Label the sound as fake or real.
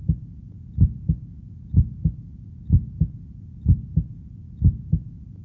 real